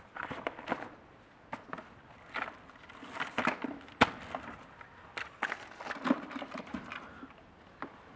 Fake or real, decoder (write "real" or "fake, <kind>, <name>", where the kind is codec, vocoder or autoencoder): real